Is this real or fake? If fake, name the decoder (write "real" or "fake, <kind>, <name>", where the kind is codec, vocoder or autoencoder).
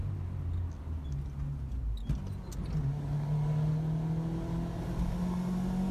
real